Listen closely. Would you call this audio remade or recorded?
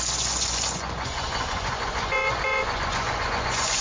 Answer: remade